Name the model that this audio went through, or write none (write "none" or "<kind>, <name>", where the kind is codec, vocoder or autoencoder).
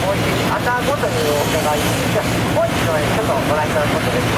none